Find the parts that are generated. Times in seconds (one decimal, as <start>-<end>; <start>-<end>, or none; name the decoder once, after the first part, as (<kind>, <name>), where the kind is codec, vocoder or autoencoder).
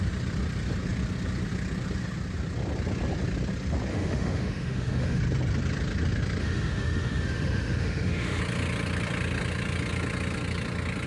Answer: 3.9-5.2 (autoencoder, DAC-VAE); 6.4-8.4